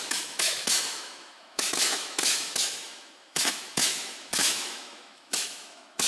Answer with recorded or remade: remade